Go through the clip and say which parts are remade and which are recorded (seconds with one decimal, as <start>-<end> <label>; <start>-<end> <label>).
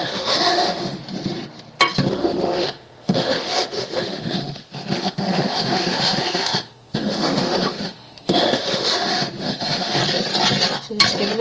0.0-1.0 remade; 1.0-2.1 recorded; 2.1-10.0 remade; 10.0-11.4 recorded